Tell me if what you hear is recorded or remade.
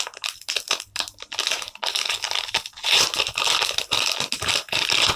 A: recorded